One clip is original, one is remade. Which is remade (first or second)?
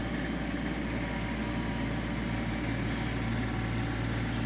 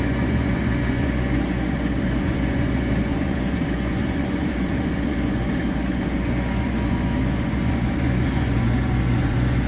second